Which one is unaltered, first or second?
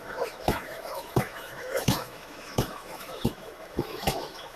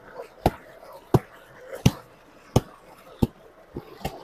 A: second